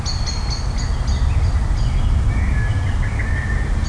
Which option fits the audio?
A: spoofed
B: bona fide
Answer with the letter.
B